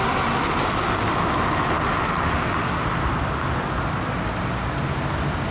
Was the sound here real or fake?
real